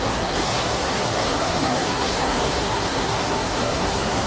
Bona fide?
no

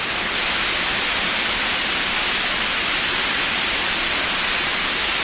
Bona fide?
yes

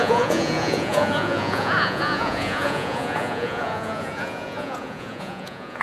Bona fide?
no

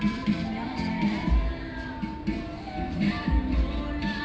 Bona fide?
yes